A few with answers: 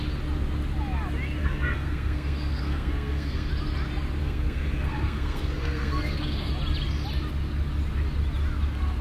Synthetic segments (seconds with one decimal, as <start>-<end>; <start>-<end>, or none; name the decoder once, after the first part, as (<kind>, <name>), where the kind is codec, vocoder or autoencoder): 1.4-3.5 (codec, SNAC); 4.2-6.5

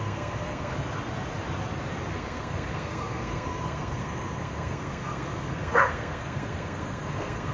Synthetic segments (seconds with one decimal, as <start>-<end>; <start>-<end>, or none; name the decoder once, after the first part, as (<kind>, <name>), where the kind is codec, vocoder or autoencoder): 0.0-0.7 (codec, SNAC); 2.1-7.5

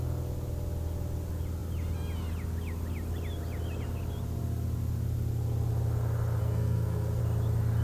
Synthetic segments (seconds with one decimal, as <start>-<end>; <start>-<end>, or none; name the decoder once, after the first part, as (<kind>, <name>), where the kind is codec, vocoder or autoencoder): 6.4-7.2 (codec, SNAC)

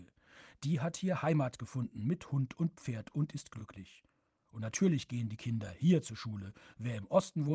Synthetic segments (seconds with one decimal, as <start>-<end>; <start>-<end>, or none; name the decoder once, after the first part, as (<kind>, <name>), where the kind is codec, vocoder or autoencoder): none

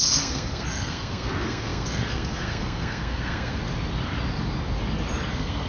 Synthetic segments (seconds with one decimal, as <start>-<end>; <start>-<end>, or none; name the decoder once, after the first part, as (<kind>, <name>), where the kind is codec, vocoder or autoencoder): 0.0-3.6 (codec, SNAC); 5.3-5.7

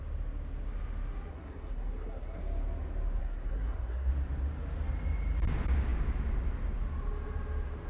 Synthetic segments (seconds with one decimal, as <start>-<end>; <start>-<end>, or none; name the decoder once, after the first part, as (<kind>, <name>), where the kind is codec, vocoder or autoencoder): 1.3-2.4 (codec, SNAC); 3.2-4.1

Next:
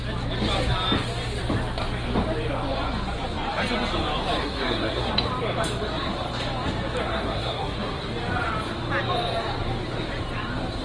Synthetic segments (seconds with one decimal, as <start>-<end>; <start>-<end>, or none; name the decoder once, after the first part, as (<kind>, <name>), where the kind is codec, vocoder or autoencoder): 4.4-5.1 (codec, SNAC); 7.0-8.1